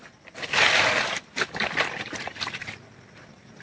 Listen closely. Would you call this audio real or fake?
real